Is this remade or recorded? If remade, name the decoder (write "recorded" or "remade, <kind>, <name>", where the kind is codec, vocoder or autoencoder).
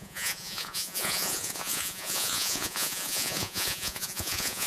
remade, vocoder, Vocos